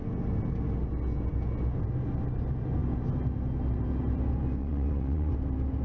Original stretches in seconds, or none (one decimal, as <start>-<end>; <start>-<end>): 0.0-4.6; 5.3-5.8